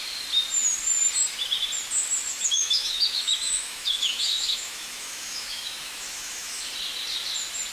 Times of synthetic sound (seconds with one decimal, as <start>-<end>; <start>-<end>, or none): 2.3-6.6